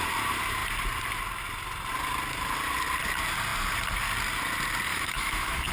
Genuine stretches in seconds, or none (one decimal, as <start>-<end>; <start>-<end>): 0.0-4.9